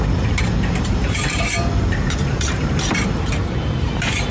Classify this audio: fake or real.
fake